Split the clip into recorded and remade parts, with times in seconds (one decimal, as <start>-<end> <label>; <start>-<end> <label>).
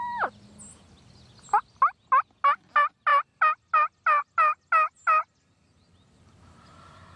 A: 0.0-7.2 recorded